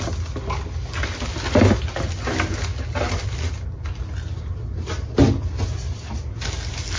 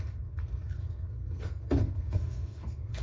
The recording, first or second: first